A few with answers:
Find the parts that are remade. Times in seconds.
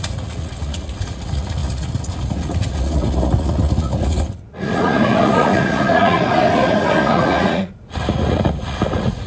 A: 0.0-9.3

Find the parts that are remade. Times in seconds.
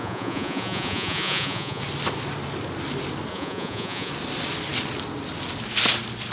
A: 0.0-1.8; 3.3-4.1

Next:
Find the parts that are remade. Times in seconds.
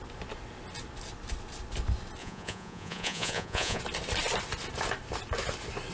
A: 2.2-3.8